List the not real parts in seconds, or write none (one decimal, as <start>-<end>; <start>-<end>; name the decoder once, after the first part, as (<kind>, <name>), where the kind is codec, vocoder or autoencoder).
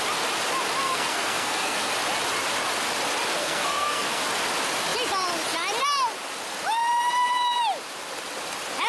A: 0.8-1.9 (codec, SNAC); 3.4-4.2